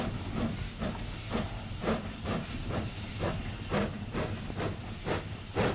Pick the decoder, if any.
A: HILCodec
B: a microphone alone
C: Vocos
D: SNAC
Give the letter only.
B